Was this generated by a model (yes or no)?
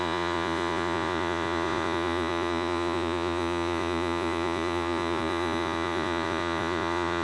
yes